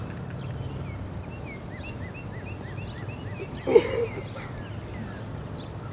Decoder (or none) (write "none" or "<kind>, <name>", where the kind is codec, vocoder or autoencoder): none